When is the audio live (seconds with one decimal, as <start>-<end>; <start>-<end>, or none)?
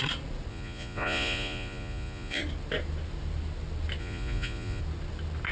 0.0-0.5; 2.4-4.0; 4.8-5.5